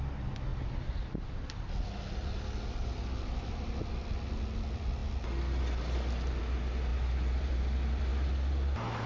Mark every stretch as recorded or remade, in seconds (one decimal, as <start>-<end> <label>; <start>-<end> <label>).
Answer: 0.0-6.9 recorded; 6.9-8.1 remade; 8.1-9.1 recorded